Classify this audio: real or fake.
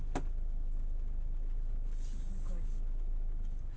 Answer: real